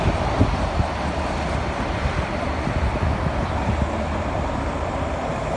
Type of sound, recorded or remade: remade